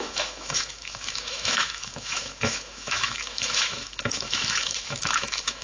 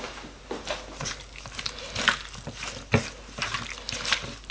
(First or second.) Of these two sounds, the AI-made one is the first